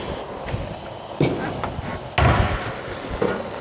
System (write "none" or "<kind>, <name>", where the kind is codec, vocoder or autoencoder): none